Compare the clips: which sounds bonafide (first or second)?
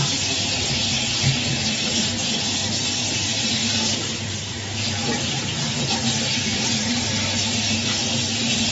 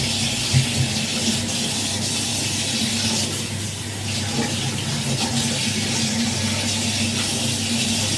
second